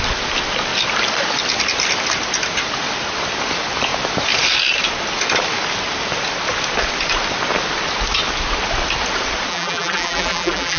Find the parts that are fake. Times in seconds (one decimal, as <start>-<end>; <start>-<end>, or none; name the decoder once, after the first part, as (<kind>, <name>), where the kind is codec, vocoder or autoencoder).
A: 9.5-10.8 (vocoder, BigVGAN v2)